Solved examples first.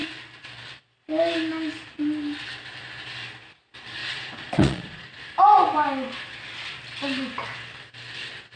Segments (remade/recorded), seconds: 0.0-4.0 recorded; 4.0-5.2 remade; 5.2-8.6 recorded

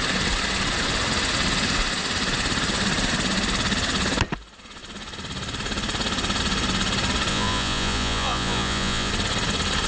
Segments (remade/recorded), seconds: 0.0-7.3 recorded; 7.3-9.1 remade; 9.1-9.9 recorded

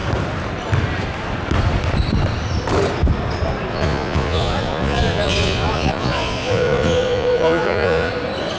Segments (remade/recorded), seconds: 0.0-3.7 recorded; 3.7-8.1 remade; 8.1-8.6 recorded

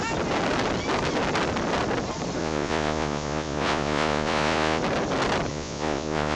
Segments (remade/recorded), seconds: 0.0-2.4 recorded; 2.4-4.8 remade; 4.8-5.5 recorded; 5.5-6.4 remade